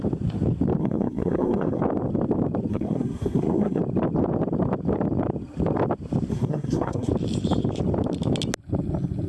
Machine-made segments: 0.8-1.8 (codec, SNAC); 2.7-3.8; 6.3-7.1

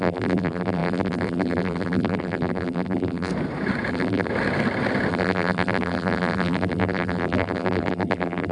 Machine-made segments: 0.0-3.3 (vocoder, BigVGAN v2); 3.9-4.3; 5.1-8.5

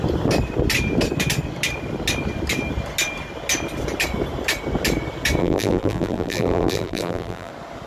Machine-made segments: 5.4-7.5 (vocoder, BigVGAN v2)

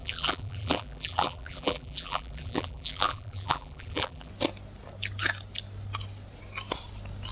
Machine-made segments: 0.0-4.3 (vocoder, BigVGAN v2)

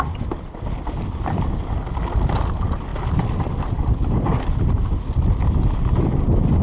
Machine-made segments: none

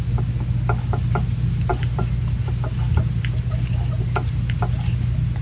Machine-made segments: none